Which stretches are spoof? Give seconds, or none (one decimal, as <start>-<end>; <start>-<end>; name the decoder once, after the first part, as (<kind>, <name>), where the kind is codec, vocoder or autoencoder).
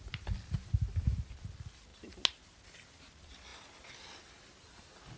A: none